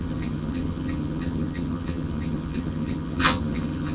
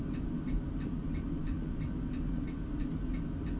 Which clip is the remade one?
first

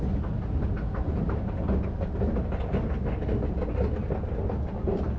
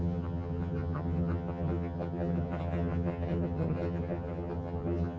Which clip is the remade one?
second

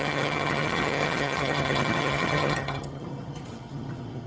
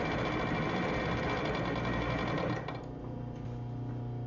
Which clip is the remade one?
first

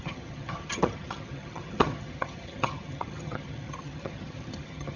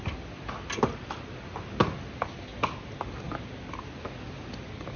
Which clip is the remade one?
first